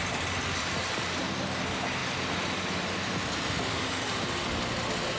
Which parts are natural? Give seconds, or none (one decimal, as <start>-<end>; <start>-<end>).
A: 0.0-5.2